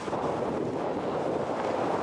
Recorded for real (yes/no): yes